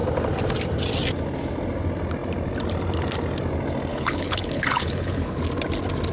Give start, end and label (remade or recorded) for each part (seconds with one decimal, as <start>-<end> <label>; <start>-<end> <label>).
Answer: 0.0-3.9 recorded; 3.9-5.4 remade; 5.4-6.1 recorded